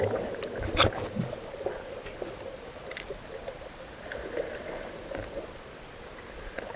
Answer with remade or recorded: recorded